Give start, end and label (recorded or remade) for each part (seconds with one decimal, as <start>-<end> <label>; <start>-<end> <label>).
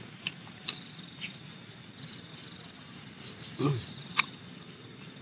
0.0-2.4 remade; 2.4-3.9 recorded; 3.9-5.2 remade